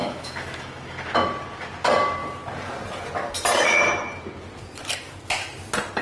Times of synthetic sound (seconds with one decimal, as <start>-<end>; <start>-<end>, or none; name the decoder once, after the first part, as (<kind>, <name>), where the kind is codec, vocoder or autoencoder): 0.0-1.0 (autoencoder, DAC-VAE)